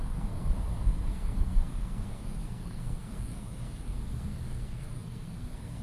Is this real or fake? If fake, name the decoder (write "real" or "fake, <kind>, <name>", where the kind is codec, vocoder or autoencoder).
fake, codec, SNAC